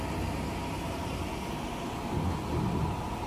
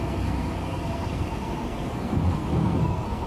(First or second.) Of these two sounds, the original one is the first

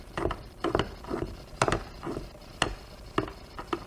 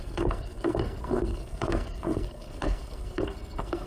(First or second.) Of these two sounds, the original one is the first